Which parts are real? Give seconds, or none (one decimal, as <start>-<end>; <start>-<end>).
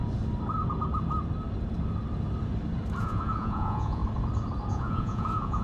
0.0-3.0; 4.0-4.7